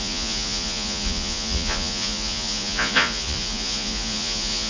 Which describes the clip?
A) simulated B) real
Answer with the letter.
A